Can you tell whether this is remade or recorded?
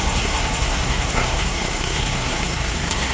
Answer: remade